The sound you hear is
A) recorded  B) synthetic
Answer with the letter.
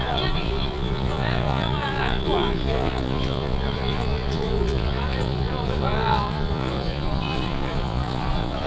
B